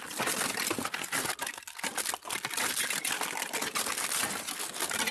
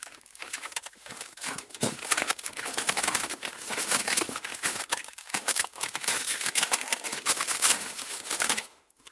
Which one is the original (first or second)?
first